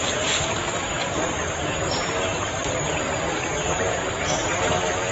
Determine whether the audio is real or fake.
real